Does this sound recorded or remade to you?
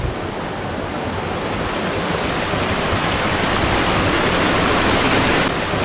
recorded